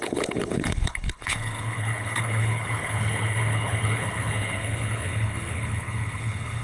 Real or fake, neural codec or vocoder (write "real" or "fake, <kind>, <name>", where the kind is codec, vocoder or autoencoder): fake, codec, HILCodec